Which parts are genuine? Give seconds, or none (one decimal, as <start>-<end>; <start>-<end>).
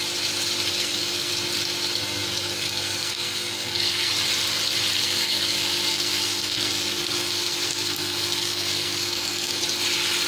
0.0-0.7; 1.3-2.0; 4.1-5.0; 9.6-10.3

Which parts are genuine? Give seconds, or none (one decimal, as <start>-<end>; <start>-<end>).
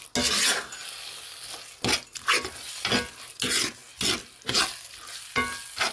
0.0-5.9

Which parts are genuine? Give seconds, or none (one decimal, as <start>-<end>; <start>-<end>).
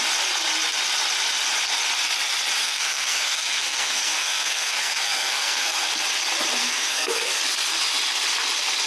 0.0-2.6; 5.9-6.6; 7.4-8.9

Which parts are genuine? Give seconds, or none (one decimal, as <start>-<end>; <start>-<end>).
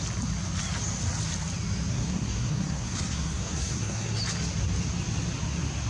0.0-1.9; 4.2-5.9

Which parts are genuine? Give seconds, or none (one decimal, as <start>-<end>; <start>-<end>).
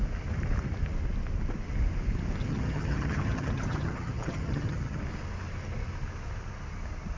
0.0-2.4; 5.0-7.2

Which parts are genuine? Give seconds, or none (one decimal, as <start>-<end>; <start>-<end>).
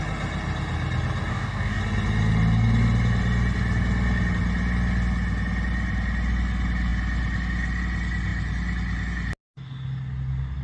0.0-1.3; 1.8-10.6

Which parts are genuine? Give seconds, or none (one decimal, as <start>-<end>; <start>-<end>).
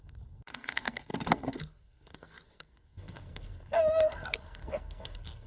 none